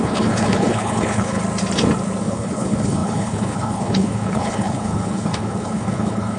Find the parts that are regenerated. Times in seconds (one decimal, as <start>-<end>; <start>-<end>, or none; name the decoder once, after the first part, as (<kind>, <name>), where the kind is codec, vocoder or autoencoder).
0.0-1.4 (codec, HILCodec); 2.2-6.4